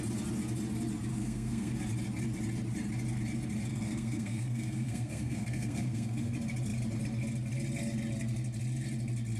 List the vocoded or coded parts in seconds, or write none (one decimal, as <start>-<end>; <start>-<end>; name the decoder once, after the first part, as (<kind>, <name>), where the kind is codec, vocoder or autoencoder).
1.1-1.7 (codec, SNAC); 3.7-6.3